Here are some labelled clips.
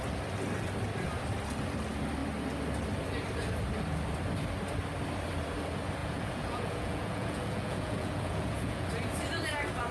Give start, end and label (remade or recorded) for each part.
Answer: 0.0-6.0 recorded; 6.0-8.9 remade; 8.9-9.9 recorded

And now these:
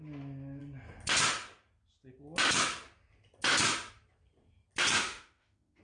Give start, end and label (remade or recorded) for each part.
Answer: 0.0-5.0 recorded; 5.0-5.8 remade

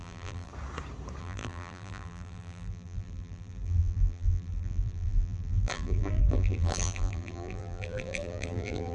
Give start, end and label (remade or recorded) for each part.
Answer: 0.0-0.5 remade; 0.5-1.2 recorded; 1.2-8.9 remade